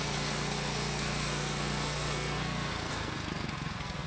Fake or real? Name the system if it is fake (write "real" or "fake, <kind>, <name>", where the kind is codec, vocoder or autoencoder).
fake, codec, SNAC